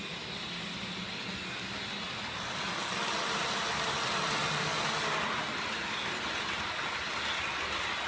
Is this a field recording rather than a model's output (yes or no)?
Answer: yes